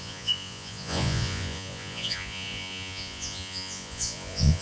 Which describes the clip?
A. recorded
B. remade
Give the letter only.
B